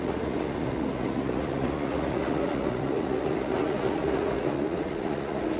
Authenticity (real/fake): fake